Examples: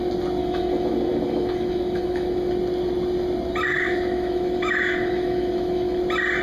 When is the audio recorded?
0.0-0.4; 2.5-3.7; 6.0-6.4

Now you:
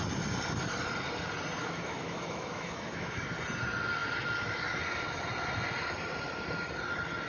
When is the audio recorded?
0.0-1.6; 3.2-7.3

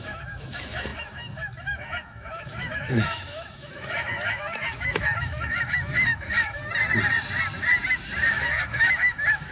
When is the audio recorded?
6.6-8.3

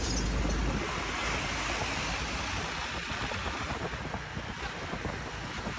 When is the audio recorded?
0.0-5.8

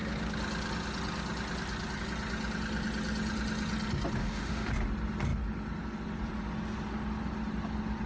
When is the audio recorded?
0.0-4.2; 4.7-8.1

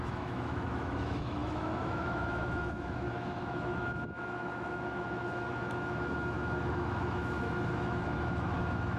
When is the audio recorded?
none